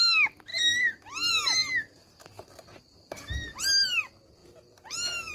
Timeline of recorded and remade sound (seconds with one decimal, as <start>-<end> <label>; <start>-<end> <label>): 0.0-0.5 recorded; 0.5-1.3 remade; 1.3-2.0 recorded; 2.0-4.0 remade; 4.0-4.4 recorded; 4.4-5.3 remade